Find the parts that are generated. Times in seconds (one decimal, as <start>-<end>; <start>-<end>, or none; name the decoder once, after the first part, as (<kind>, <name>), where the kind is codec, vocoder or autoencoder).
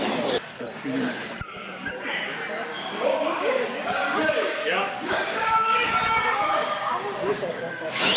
2.7-7.6 (codec, DAC)